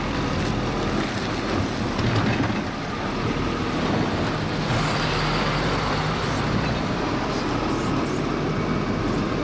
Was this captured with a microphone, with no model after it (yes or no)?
yes